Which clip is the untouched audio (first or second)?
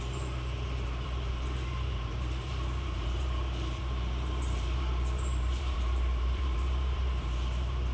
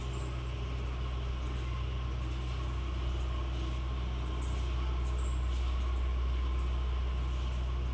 second